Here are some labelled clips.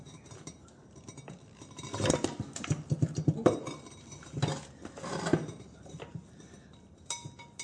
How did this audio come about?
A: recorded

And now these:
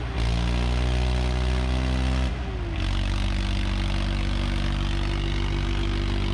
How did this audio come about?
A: recorded